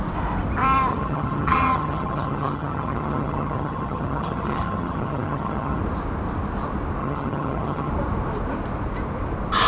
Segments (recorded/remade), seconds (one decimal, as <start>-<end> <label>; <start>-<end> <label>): 0.0-0.9 recorded; 0.9-5.8 remade; 5.8-7.0 recorded; 7.0-7.9 remade; 7.9-9.7 recorded